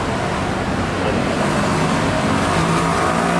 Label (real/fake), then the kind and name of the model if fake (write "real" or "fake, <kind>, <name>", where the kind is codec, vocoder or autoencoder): real